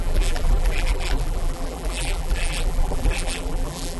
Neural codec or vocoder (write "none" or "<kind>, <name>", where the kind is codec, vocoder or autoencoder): vocoder, BigVGAN v2